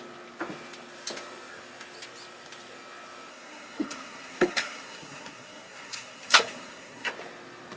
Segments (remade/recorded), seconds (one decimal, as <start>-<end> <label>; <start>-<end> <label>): 0.0-3.3 recorded; 3.3-7.1 remade; 7.1-7.8 recorded